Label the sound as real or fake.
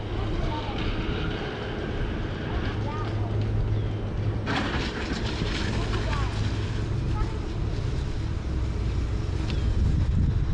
real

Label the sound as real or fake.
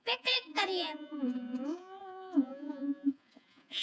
fake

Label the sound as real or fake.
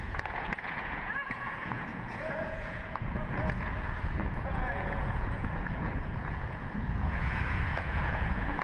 fake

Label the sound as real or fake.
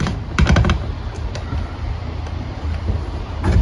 real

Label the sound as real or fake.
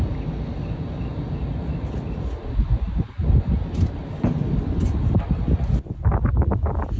real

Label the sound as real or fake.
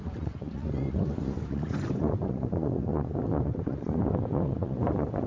fake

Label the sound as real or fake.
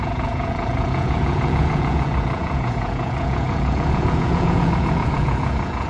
fake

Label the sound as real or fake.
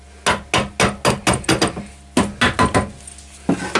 real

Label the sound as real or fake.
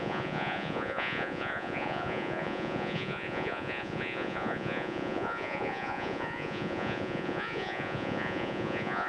fake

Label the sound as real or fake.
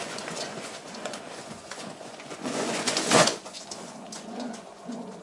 fake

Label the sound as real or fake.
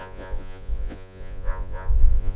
fake